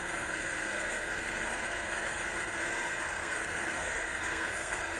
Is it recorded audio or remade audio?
remade